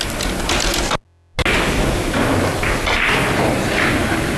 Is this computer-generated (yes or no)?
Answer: no